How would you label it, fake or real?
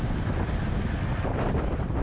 real